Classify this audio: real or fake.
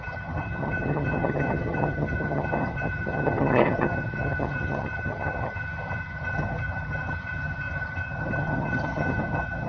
fake